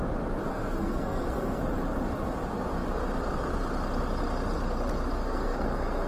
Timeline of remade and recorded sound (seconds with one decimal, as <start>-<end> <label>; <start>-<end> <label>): 0.0-0.5 recorded; 0.5-1.6 remade; 1.6-5.2 recorded; 5.2-6.1 remade